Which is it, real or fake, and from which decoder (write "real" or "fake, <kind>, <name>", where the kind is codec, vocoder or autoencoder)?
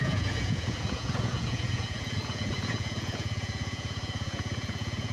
fake, vocoder, Vocos